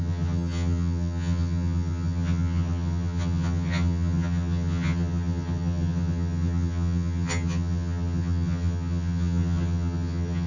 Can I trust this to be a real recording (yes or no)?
no